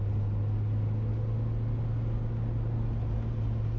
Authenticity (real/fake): real